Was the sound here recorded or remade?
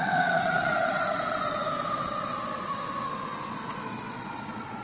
remade